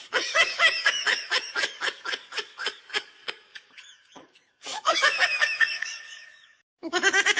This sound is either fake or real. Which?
fake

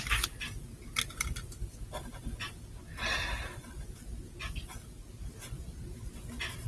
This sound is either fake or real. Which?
real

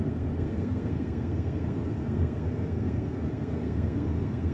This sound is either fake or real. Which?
fake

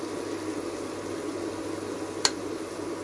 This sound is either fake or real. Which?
real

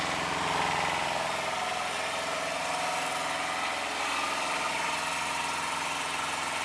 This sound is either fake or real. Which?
real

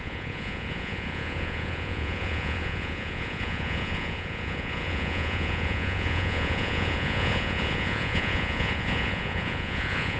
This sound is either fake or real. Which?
fake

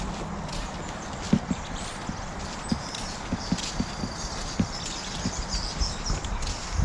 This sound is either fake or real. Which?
real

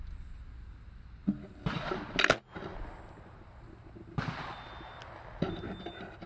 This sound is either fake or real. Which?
real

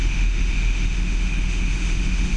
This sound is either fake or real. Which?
fake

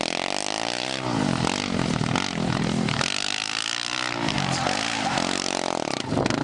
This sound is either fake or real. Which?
real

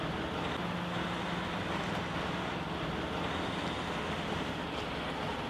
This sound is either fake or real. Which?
real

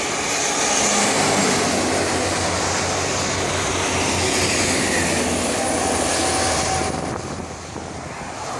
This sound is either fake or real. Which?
real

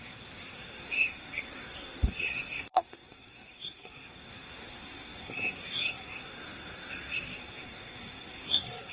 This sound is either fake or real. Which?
fake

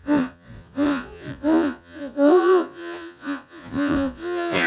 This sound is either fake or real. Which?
fake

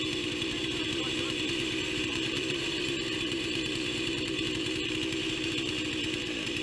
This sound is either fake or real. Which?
fake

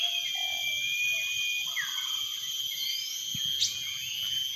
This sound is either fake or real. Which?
real